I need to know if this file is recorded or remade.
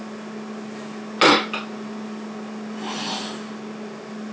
recorded